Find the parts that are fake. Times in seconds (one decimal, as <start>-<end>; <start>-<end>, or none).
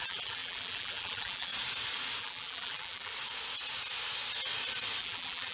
0.0-1.5; 2.2-3.1; 5.0-5.5